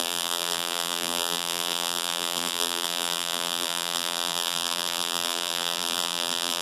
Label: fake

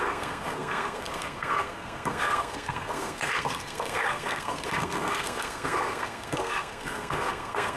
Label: fake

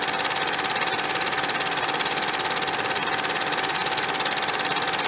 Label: real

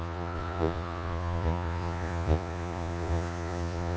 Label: fake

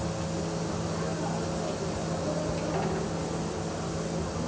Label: real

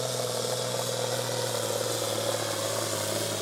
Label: real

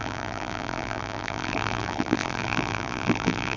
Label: fake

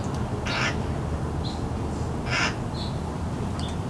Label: real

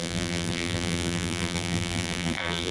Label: fake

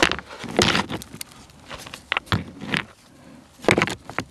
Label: real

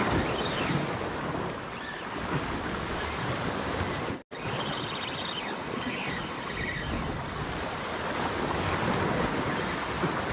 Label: real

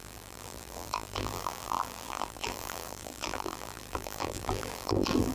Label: fake